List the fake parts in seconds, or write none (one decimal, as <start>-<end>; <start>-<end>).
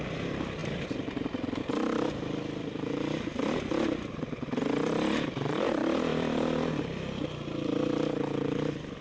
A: 0.6-1.6; 6.1-6.7